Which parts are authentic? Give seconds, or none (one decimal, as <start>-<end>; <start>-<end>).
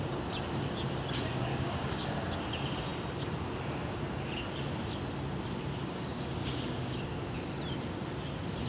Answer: 0.0-1.5; 2.1-5.8; 7.0-8.7